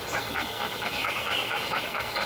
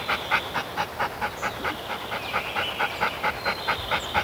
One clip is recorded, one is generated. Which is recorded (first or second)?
second